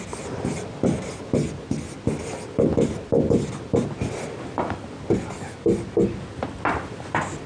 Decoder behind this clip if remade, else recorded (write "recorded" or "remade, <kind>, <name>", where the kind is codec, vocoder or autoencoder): recorded